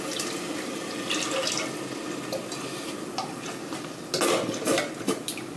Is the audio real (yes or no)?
yes